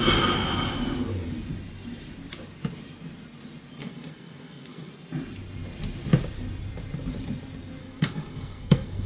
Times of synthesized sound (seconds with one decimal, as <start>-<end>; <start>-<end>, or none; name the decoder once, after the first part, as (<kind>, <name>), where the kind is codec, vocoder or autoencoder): 3.8-4.9 (codec, SNAC); 7.8-9.1